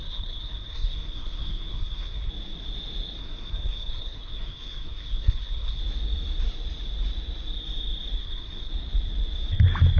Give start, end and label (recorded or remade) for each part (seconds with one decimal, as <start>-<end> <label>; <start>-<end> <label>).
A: 0.0-2.3 remade; 2.3-3.2 recorded; 3.2-5.8 remade; 5.8-8.2 recorded; 8.2-8.7 remade; 8.7-10.0 recorded